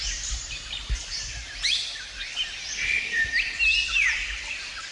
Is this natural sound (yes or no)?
yes